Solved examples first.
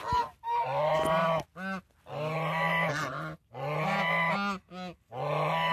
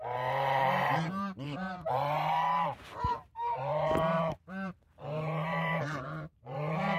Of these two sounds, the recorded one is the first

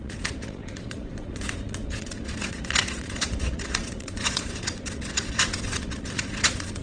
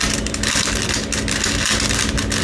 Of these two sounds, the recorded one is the second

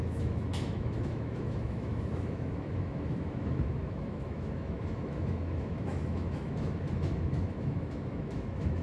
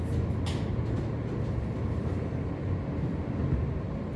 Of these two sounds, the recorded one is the second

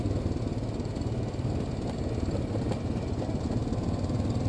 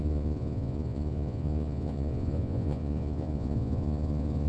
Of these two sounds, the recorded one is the first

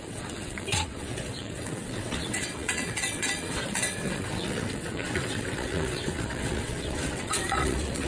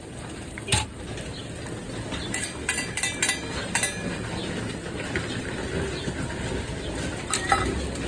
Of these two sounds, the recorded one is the second